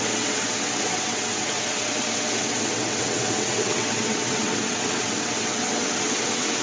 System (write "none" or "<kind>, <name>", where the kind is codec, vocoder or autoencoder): vocoder, WaveNeXt